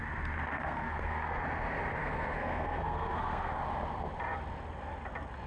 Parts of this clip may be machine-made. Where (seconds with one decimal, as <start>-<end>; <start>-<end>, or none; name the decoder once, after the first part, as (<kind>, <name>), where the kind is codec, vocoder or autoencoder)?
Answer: 0.5-1.4 (codec, SNAC); 2.0-3.5